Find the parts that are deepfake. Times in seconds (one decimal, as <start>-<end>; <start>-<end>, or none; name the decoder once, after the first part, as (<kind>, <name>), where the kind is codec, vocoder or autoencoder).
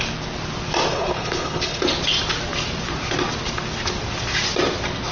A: 0.9-1.8 (codec, HILCodec)